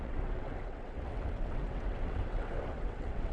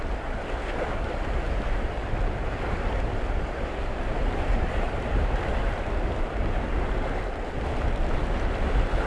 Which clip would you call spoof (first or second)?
first